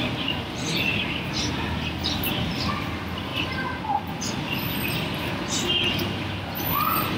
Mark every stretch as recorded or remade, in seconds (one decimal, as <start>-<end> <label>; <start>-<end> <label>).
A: 0.0-7.2 recorded